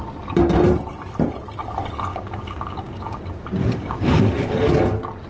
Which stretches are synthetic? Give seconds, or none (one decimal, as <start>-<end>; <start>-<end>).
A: 2.1-3.2; 3.6-4.2